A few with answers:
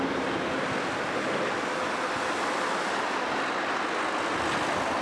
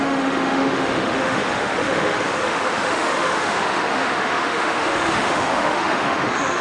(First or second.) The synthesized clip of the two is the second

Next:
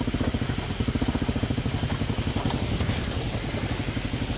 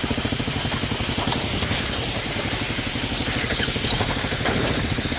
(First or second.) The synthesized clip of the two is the second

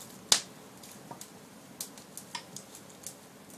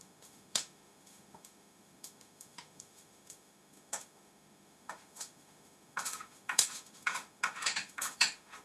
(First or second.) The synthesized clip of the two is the second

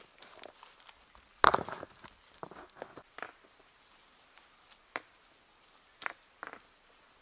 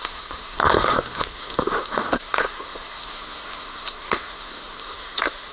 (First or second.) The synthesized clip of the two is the second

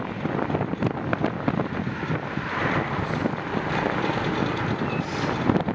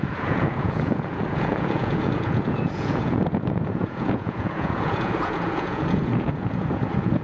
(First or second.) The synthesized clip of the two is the second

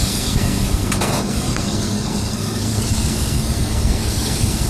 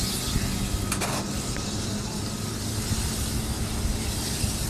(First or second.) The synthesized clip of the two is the first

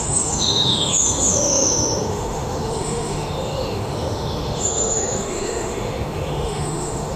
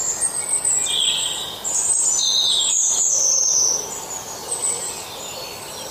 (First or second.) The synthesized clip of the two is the first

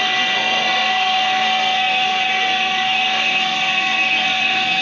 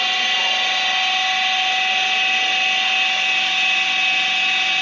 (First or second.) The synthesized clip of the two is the first